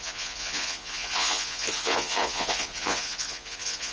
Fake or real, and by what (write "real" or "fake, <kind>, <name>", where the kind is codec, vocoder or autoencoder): fake, vocoder, Vocos